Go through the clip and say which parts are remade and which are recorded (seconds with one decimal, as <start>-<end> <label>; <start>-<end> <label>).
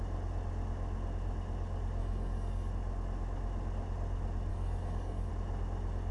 0.0-2.0 recorded; 2.0-2.7 remade; 2.7-4.5 recorded; 4.5-5.3 remade; 5.3-6.1 recorded